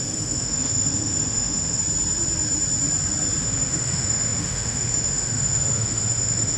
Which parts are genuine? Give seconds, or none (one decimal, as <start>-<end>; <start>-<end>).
1.8-3.4